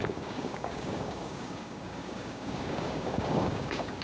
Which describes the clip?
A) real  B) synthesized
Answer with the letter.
B